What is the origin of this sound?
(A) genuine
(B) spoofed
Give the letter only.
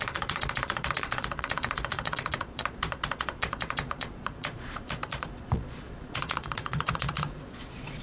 B